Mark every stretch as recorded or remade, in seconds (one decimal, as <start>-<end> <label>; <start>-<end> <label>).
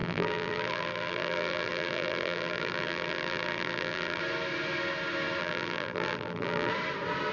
0.0-4.2 remade; 4.2-5.4 recorded; 5.4-6.7 remade; 6.7-7.3 recorded